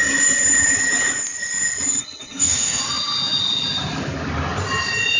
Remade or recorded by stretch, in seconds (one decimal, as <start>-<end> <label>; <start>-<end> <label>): 0.0-2.0 recorded; 2.0-2.8 remade; 2.8-5.2 recorded